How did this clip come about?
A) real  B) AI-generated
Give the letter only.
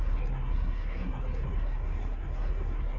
B